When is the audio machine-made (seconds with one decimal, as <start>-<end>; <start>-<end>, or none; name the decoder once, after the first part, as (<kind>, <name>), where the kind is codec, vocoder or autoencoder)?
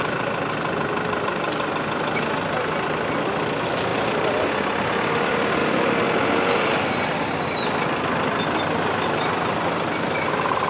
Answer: 0.0-1.2 (vocoder, BigVGAN v2); 3.9-4.5